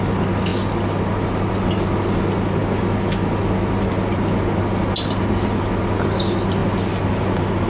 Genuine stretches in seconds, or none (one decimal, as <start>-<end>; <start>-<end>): 0.0-7.7